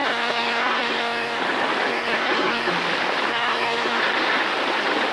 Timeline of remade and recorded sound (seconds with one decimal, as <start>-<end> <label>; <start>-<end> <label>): 0.0-1.4 remade; 1.4-1.9 recorded; 1.9-2.7 remade; 2.7-3.3 recorded; 3.3-4.0 remade; 4.0-5.1 recorded